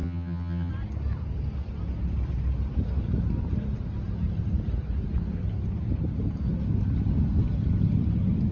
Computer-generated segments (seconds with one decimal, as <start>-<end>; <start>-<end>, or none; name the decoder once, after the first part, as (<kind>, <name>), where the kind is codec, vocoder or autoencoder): 0.0-0.7 (vocoder, HiFi-GAN)